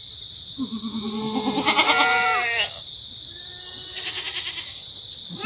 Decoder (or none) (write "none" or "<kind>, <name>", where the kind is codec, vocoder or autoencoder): none